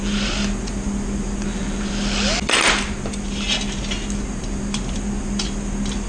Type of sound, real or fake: real